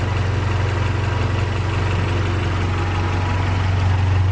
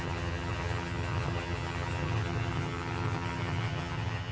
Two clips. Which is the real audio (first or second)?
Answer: first